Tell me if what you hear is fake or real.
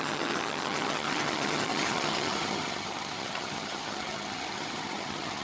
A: fake